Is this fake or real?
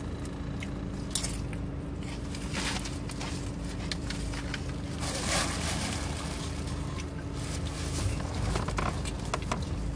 real